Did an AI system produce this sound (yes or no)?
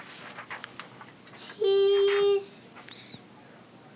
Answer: no